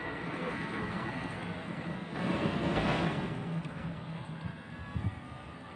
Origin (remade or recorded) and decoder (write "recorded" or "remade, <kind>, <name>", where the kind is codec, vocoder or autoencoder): remade, codec, SNAC